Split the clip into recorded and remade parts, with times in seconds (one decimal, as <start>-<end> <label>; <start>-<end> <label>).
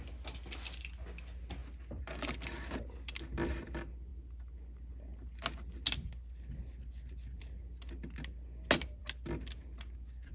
0.0-10.3 recorded